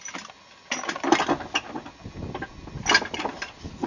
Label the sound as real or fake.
real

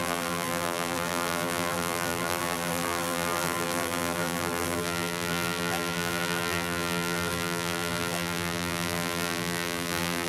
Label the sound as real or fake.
fake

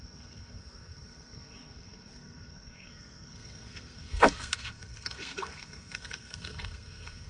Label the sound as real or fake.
fake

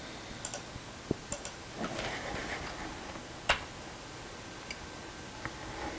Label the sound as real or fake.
real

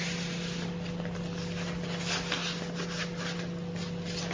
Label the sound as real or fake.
real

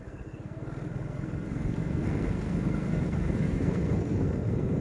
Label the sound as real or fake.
fake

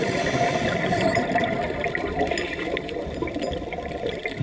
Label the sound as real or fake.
real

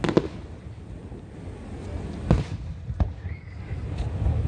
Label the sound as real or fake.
real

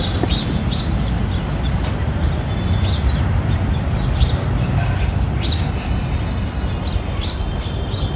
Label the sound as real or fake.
real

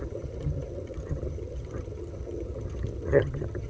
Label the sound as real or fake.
fake